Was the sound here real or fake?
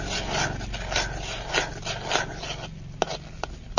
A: real